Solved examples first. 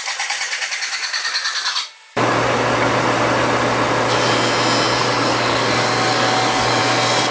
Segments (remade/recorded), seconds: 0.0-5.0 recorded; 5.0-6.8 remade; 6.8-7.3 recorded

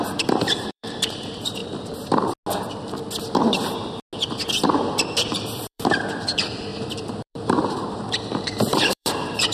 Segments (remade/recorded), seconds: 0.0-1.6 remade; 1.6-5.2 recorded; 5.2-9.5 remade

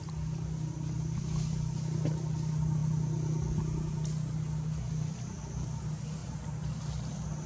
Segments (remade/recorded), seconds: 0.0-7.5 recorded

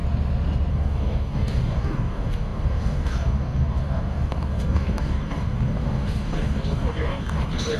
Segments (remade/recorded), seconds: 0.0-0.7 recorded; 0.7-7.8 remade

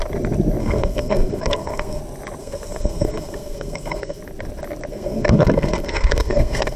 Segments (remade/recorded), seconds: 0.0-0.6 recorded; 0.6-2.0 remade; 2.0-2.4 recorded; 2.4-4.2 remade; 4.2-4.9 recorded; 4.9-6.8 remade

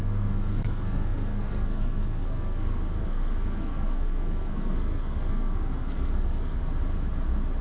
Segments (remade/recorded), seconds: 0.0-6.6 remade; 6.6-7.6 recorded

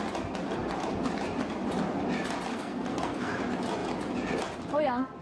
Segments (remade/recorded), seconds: 0.0-2.5 recorded; 2.5-3.4 remade; 3.4-5.2 recorded

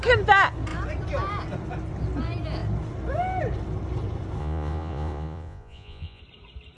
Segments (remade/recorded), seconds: 0.0-4.4 recorded; 4.4-6.2 remade; 6.2-6.8 recorded